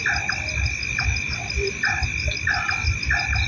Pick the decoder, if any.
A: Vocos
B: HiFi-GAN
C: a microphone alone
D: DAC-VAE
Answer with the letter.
C